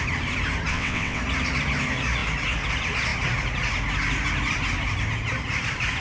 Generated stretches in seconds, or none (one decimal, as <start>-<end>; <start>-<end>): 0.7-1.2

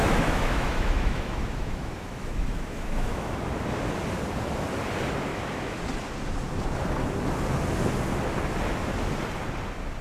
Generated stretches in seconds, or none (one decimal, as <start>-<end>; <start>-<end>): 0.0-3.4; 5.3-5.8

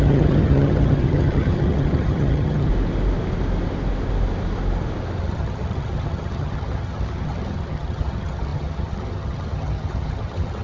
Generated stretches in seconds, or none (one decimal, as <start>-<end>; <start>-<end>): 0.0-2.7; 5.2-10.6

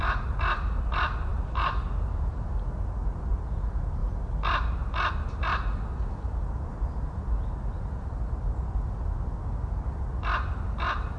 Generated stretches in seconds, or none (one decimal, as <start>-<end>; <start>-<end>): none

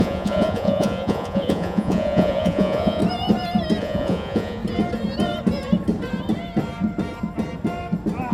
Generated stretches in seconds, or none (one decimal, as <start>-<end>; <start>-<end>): 0.0-3.0; 3.8-4.6

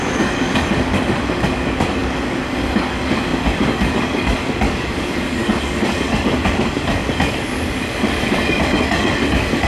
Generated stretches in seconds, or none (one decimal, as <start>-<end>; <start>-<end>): 0.0-9.7

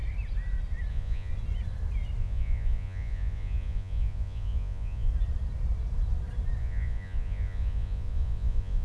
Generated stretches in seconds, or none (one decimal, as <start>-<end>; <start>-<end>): 0.9-1.3; 2.2-5.1; 6.6-8.8

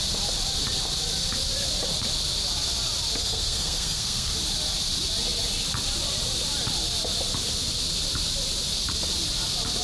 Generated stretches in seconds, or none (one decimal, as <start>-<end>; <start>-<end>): 3.2-4.3